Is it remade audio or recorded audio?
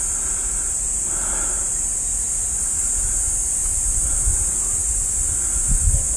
recorded